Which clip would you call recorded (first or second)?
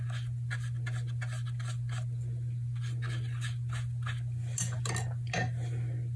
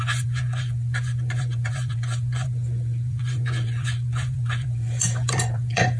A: first